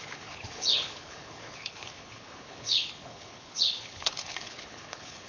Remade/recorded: remade